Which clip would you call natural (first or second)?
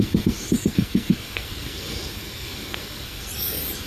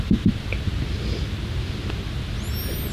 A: second